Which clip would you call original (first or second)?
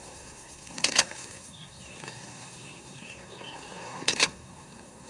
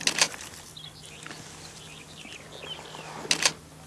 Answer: second